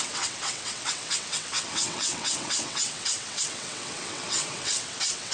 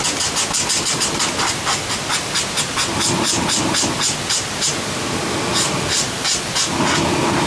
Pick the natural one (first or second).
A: second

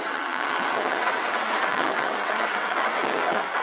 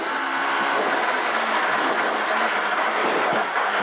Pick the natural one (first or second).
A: second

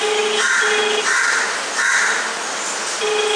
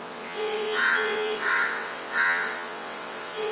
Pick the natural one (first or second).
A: first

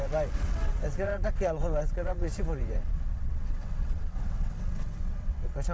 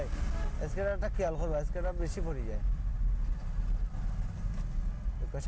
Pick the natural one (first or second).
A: second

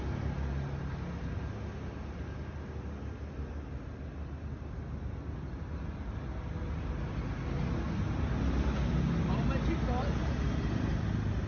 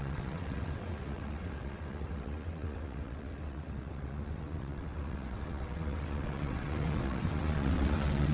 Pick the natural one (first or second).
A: first